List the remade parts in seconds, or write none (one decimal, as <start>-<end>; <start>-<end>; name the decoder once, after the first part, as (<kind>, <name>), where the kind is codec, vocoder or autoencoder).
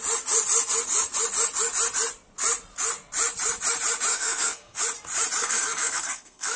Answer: 4.1-4.8 (codec, SNAC); 5.4-6.6